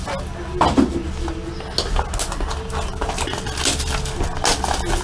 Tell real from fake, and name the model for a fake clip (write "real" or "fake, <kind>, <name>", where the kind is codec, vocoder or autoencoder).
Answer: real